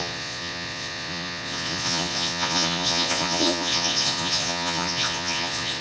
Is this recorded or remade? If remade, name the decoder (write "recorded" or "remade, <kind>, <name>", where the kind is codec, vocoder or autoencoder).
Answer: remade, vocoder, Vocos